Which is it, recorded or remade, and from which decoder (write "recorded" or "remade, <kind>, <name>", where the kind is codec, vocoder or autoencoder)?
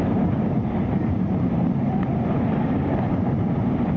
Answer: remade, vocoder, BigVGAN v2